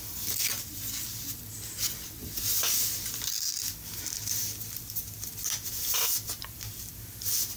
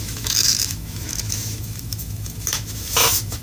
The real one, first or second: first